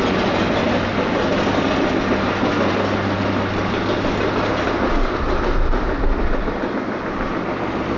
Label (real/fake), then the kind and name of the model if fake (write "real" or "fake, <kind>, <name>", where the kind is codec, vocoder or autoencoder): real